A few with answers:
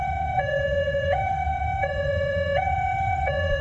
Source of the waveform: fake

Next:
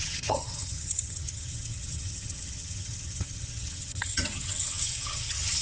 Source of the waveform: fake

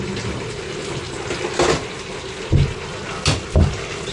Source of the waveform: real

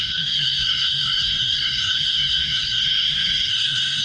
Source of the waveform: fake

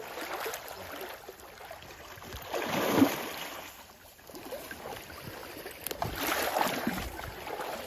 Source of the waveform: real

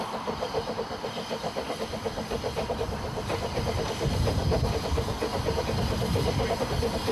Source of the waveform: real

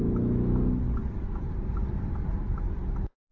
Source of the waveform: real